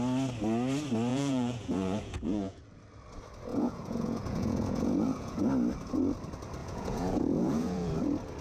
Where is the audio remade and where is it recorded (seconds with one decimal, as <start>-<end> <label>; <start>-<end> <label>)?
0.0-1.1 recorded; 1.1-2.6 remade; 2.6-3.5 recorded; 3.5-5.5 remade; 5.5-6.6 recorded; 6.6-7.9 remade; 7.9-8.4 recorded